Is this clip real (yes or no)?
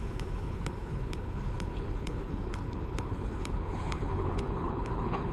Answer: no